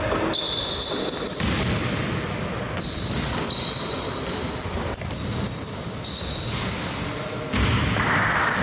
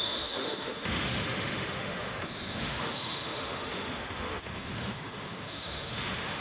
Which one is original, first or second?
first